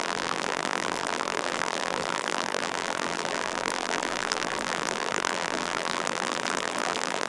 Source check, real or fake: fake